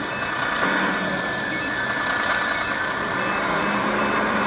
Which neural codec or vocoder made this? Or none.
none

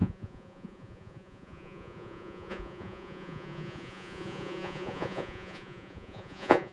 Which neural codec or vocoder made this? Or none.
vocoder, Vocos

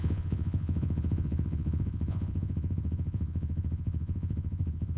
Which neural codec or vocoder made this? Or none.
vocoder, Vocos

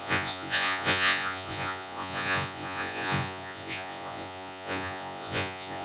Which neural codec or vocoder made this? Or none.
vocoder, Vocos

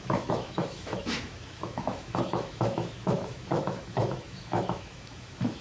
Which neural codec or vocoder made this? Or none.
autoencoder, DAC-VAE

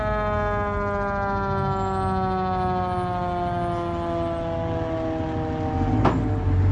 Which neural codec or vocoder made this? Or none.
none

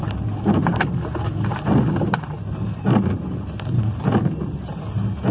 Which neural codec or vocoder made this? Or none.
none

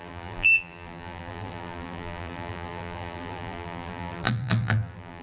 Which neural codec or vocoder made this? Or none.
vocoder, BigVGAN v2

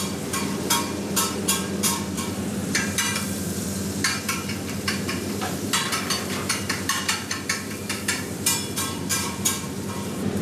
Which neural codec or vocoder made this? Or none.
vocoder, BigVGAN v2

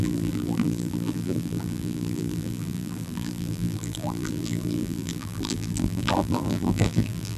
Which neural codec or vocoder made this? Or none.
vocoder, BigVGAN v2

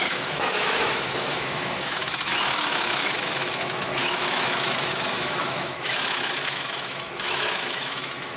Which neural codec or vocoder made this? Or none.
autoencoder, DAC-VAE